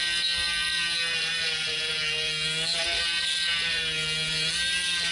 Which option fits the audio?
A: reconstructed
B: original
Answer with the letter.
B